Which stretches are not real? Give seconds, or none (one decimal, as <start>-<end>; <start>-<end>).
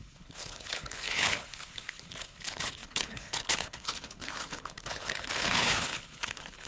0.0-6.7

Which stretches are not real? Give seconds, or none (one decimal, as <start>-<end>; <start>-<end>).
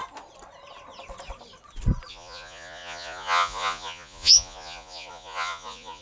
2.1-6.0